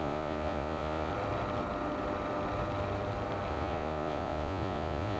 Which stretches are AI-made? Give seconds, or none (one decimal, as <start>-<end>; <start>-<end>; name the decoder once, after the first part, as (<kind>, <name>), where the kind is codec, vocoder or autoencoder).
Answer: 0.0-1.1 (vocoder, Vocos); 3.5-5.2